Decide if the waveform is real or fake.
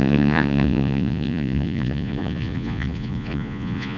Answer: fake